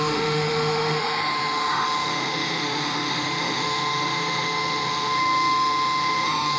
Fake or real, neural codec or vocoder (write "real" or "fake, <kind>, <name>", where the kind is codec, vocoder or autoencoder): fake, autoencoder, DAC-VAE